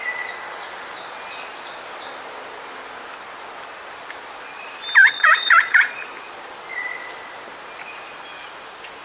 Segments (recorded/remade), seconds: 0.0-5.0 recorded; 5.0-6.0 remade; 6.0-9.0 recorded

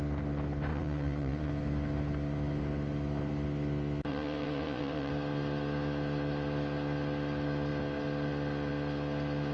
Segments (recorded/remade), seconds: 0.0-0.7 recorded; 0.7-1.5 remade; 1.5-4.1 recorded; 4.1-5.1 remade; 5.1-9.5 recorded

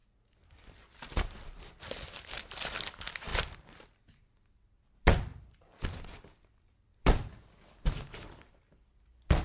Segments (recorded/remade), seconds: 0.0-1.7 recorded; 1.7-3.3 remade; 3.3-4.7 recorded; 4.7-5.3 remade; 5.3-6.6 recorded; 6.6-9.4 remade